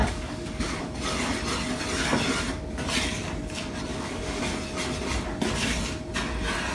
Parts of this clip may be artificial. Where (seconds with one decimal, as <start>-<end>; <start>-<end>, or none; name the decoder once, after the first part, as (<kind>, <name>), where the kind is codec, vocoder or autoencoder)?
0.0-0.8 (codec, DAC); 3.9-4.4